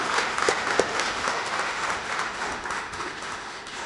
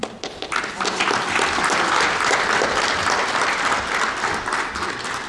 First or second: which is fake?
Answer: first